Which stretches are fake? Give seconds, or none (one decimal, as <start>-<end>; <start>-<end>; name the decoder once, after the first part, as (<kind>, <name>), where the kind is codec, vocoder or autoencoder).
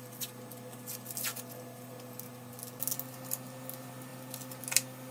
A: none